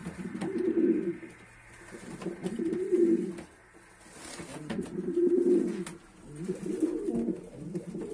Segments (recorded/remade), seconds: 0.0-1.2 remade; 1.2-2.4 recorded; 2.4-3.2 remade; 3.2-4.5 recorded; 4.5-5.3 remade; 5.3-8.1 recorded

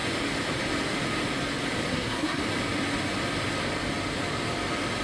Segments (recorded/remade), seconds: 0.0-1.9 recorded; 1.9-2.4 remade; 2.4-5.0 recorded

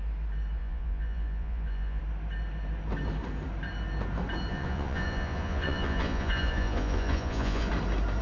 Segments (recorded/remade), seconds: 0.0-0.6 recorded; 0.6-2.0 remade; 2.0-4.5 recorded; 4.5-7.7 remade; 7.7-8.2 recorded

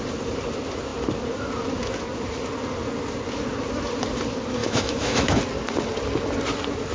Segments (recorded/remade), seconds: 0.0-4.6 recorded; 4.6-5.4 remade; 5.4-6.9 recorded